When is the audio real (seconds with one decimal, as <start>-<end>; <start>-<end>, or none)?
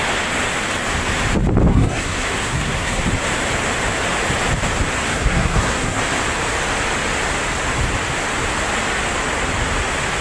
0.0-1.7; 3.0-5.1; 6.0-10.2